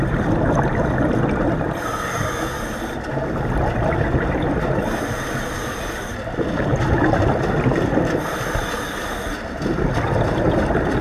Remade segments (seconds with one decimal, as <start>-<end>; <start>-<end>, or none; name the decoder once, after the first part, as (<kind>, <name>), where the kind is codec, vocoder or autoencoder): none